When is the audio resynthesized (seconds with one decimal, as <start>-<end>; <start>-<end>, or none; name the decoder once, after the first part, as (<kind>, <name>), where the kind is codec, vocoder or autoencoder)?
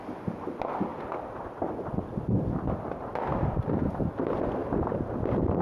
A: none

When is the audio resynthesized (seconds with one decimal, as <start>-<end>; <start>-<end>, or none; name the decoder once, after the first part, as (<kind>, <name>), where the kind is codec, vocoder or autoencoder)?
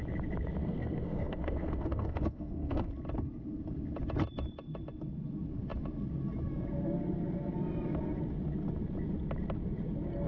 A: 0.6-2.9 (codec, SNAC)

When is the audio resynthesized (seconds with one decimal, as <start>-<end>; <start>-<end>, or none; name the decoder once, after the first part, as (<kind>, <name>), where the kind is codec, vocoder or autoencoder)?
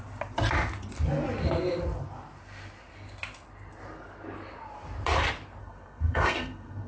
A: 5.6-6.9 (codec, SNAC)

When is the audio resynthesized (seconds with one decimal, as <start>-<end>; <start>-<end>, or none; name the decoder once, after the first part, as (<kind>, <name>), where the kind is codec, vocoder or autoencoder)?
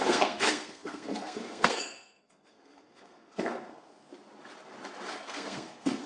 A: 0.0-4.1 (codec, SNAC); 5.1-6.1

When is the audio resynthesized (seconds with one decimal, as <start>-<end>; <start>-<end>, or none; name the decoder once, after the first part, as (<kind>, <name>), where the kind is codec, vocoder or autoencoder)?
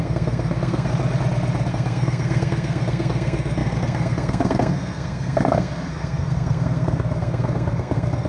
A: 0.0-0.9 (codec, SNAC); 1.7-8.3